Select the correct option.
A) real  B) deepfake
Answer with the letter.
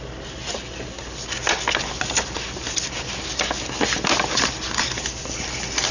A